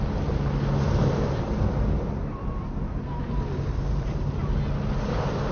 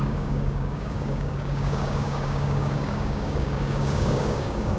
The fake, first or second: second